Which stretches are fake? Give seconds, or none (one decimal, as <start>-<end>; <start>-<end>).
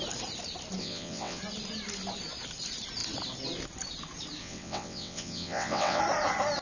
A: 0.8-1.4; 4.4-6.0